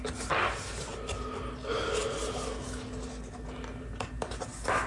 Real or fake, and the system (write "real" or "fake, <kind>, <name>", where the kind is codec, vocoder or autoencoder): real